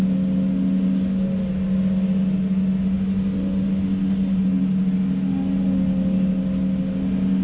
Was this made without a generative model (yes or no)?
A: yes